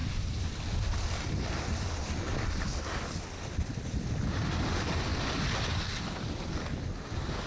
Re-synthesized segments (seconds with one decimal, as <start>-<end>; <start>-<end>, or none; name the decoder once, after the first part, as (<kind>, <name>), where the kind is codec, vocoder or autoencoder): none